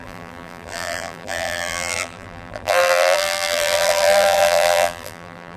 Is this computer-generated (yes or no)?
yes